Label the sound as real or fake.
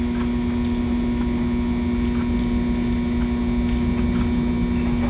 real